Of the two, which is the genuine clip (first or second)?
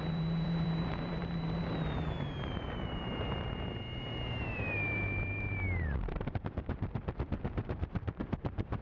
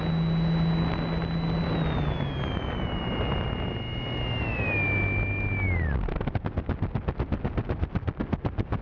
second